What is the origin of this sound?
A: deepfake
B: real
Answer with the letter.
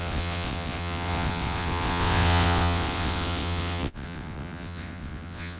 A